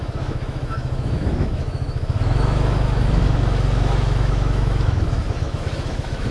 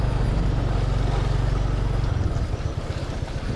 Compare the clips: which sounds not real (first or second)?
first